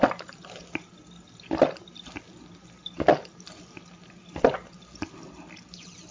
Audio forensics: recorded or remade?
recorded